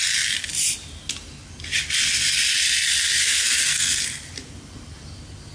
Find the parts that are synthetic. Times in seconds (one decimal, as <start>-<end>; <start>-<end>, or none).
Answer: 3.2-4.0